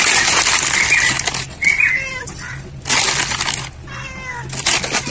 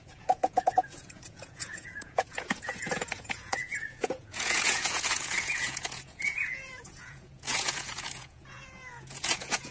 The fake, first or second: second